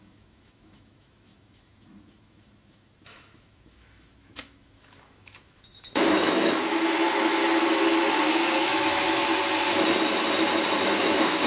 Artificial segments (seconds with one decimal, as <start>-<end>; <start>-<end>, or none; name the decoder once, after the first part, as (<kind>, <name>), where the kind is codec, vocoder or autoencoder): 0.0-7.4 (autoencoder, DAC-VAE); 8.1-9.3; 11.0-11.5